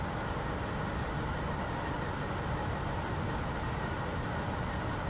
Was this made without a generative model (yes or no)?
yes